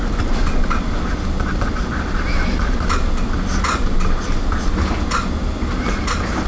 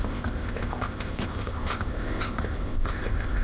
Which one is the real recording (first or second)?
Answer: first